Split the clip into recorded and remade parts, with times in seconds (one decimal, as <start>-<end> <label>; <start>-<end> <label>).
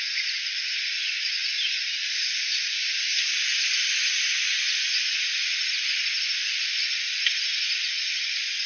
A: 0.0-8.7 recorded